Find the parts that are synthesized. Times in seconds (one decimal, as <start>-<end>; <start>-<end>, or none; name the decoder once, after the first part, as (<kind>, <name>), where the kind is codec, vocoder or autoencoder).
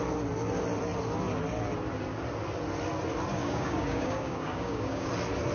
3.3-5.1 (codec, DAC)